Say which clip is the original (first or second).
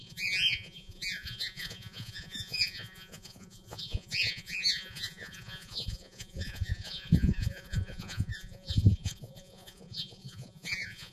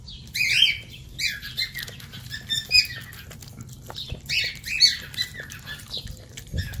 second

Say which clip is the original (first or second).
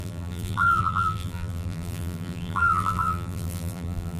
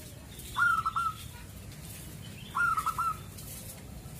second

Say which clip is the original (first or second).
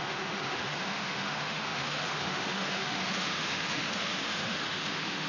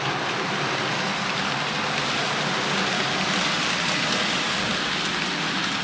second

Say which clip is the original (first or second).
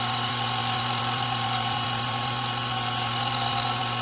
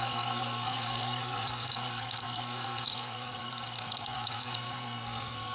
first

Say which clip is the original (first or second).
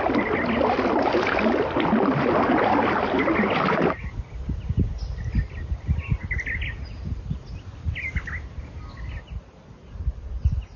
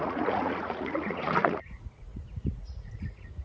first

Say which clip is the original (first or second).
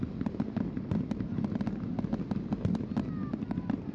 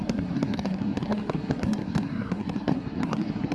first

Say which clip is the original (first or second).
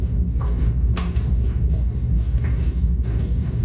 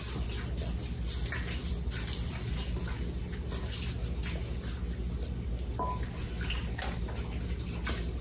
second